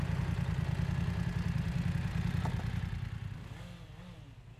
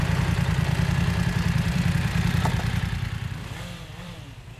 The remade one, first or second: second